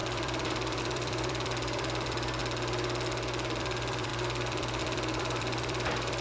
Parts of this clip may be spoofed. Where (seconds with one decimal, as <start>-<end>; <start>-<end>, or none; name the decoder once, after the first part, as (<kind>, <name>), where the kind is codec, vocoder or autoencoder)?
0.0-2.4 (vocoder, BigVGAN v2); 3.6-6.2